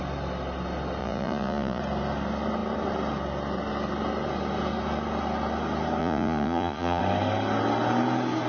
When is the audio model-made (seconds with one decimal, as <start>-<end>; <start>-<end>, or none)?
1.0-1.8; 6.0-7.0